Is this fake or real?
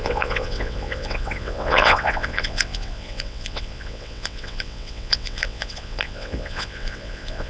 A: fake